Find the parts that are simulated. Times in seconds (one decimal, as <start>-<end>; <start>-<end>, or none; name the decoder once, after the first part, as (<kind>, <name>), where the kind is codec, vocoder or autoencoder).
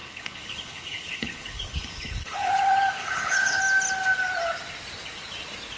0.0-2.5 (codec, HILCodec); 3.0-3.6